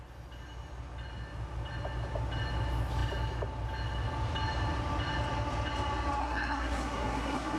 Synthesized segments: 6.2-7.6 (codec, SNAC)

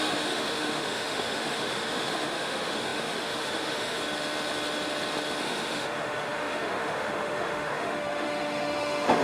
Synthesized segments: 0.0-4.0 (autoencoder, DAC-VAE); 5.4-9.2

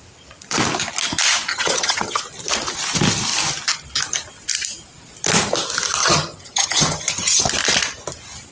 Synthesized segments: 1.5-2.2 (vocoder, HiFi-GAN); 6.0-7.4

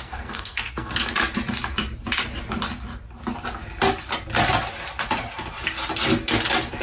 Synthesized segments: 0.0-1.1 (codec, SNAC)

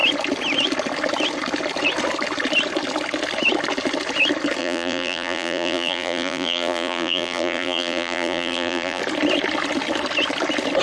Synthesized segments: 4.6-9.0 (vocoder, BigVGAN v2)

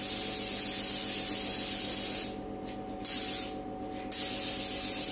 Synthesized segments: none

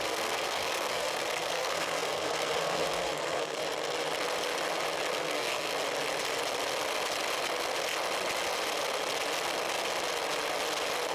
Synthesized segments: 0.0-3.6 (codec, SNAC); 5.1-5.7

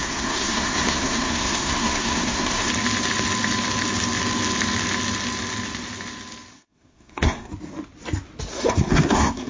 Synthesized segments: 0.0-2.7 (codec, SNAC); 6.5-7.5; 8.5-9.5